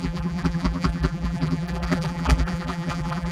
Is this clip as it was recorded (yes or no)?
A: no